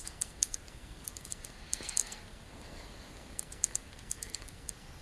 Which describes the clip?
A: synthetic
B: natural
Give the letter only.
A